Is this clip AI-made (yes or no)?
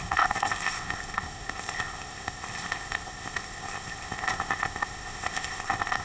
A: yes